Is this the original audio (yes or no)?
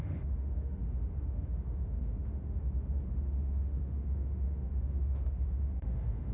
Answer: no